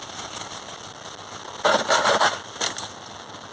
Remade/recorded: recorded